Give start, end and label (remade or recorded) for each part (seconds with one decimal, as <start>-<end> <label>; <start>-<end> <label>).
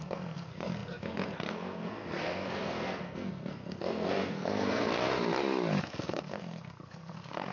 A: 0.0-5.1 remade; 5.1-5.8 recorded; 5.8-7.5 remade